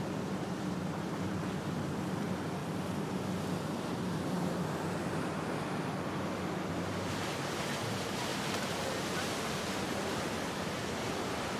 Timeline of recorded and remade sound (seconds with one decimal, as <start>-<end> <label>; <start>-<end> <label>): 0.0-2.6 remade; 2.6-6.7 recorded; 6.7-8.3 remade; 8.3-9.9 recorded; 9.9-11.6 remade